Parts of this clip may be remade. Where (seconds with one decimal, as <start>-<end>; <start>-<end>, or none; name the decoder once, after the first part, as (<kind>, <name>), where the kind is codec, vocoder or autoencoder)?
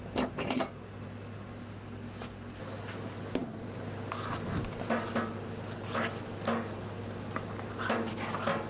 none